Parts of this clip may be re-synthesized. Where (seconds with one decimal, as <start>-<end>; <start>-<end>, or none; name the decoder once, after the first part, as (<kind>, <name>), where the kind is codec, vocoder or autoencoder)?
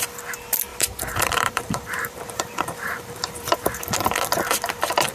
0.7-3.8 (vocoder, BigVGAN v2)